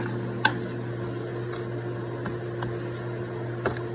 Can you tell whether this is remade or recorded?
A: recorded